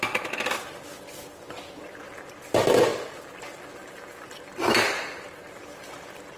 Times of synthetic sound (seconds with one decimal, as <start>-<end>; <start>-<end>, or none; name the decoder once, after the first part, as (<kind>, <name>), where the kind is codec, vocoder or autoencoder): 2.9-4.6 (vocoder, BigVGAN v2)